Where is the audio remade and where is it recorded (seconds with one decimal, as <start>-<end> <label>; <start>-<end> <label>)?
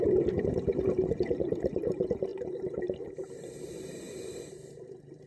0.0-5.3 remade